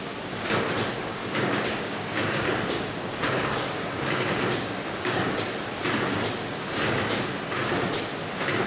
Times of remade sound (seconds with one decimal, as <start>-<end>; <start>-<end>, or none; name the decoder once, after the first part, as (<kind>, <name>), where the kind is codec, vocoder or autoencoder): 1.2-5.5 (codec, DAC); 6.4-7.3